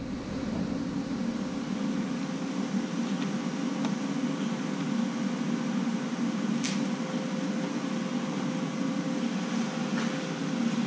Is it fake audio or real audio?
real